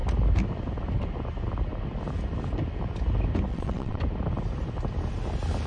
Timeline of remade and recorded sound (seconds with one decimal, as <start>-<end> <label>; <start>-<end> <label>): 0.0-3.5 recorded; 3.5-4.0 remade; 4.0-5.7 recorded